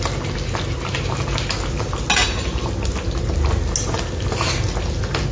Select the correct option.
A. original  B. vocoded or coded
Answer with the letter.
A